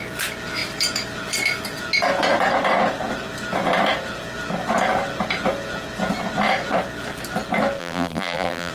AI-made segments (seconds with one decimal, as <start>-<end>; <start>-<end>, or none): 7.8-8.7